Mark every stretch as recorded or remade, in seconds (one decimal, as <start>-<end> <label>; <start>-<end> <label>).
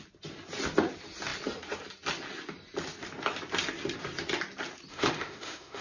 0.0-4.9 recorded; 4.9-5.8 remade